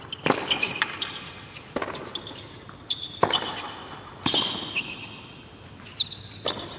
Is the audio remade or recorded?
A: recorded